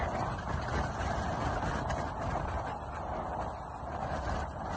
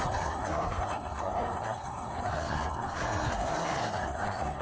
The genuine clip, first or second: first